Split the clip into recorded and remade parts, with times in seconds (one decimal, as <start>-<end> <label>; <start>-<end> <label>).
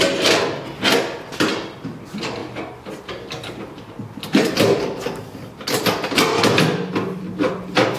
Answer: 0.0-8.0 recorded